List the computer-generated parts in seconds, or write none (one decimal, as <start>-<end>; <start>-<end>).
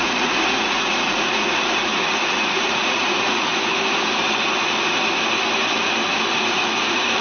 0.0-3.5; 6.3-7.2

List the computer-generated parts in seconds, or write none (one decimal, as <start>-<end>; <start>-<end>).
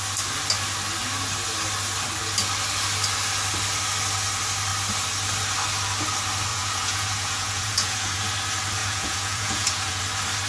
6.5-8.2; 8.8-10.0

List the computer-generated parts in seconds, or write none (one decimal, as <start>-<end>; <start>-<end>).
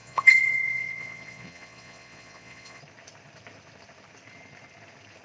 0.0-2.8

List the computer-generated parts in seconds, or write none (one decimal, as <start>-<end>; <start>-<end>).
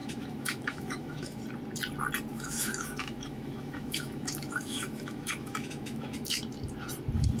0.0-1.4; 2.3-6.4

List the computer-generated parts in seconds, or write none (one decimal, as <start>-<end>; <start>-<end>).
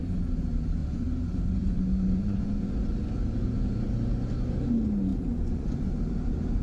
0.8-2.8; 5.1-6.0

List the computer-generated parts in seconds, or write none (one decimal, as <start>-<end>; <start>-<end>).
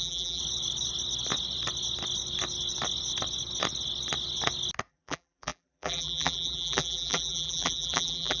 0.0-0.4; 4.9-8.4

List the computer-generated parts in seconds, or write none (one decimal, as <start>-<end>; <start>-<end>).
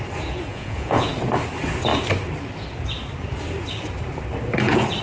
0.5-1.1